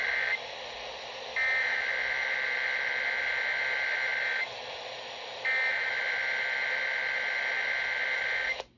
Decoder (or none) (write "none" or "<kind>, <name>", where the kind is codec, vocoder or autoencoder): none